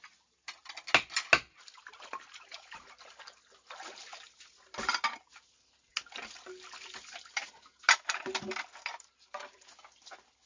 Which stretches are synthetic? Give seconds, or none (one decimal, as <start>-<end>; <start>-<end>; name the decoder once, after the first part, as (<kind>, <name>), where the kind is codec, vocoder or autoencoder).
none